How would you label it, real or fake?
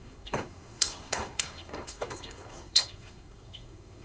fake